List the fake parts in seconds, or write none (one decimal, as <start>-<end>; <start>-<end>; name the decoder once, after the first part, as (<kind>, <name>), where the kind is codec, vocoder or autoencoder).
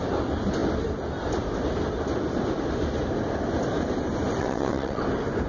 4.4-5.0 (vocoder, WaveNeXt)